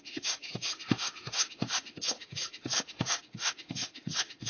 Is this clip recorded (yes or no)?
no